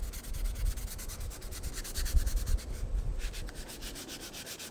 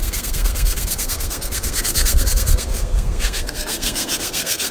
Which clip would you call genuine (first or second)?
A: first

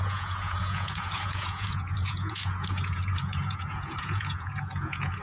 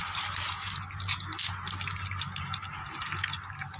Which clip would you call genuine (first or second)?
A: second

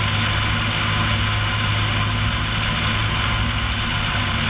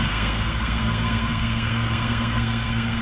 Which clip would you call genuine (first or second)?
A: first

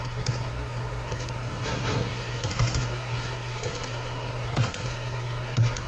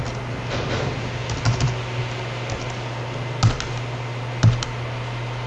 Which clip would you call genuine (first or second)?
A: second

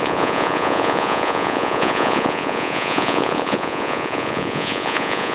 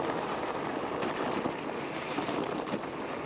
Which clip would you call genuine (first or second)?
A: second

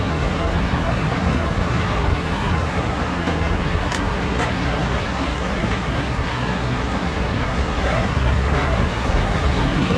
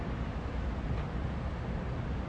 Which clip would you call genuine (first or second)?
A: second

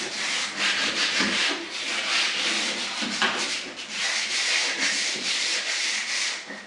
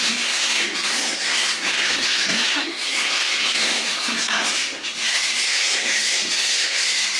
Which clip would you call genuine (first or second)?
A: first